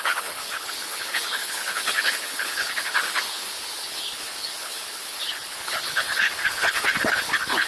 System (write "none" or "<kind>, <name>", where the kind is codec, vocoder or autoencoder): codec, HILCodec